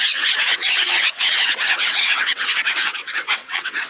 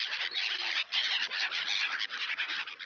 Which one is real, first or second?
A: second